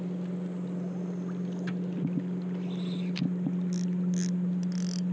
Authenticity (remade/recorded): recorded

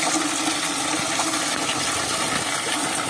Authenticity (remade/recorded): recorded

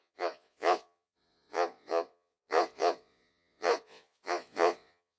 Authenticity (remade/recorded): remade